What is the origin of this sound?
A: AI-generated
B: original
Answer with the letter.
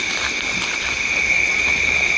A